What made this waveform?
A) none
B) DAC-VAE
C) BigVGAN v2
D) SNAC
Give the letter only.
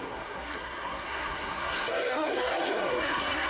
D